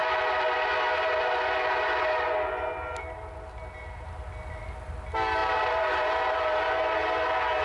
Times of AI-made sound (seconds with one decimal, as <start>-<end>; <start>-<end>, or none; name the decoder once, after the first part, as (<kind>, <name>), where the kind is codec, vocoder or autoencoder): none

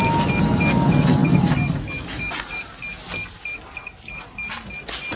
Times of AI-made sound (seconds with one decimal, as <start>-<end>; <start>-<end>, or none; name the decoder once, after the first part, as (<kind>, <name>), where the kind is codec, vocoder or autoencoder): none